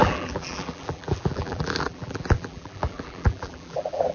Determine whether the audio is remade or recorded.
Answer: remade